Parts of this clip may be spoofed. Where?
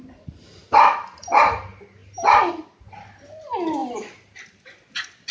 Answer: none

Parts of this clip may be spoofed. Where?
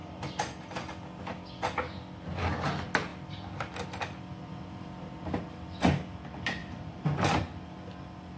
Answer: 6.6-7.4 (vocoder, BigVGAN v2)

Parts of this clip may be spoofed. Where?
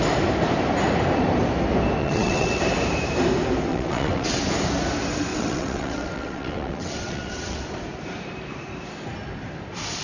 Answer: 2.0-2.6 (vocoder, WaveNeXt); 3.7-4.4; 5.3-7.6